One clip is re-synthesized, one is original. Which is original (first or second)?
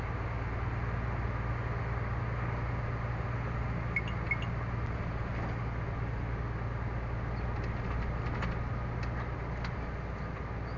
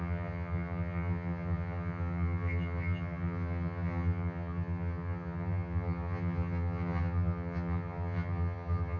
first